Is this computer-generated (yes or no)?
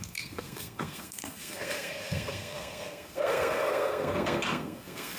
yes